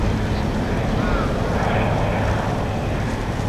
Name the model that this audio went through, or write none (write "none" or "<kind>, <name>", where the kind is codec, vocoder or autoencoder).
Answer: none